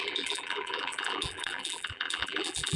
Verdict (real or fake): fake